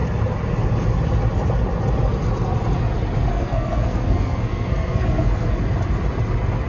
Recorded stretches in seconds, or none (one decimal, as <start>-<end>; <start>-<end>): 0.0-3.3; 5.6-6.7